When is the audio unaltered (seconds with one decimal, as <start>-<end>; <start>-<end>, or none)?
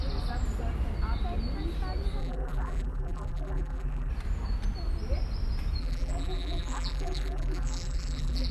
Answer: 0.0-2.2; 4.1-5.8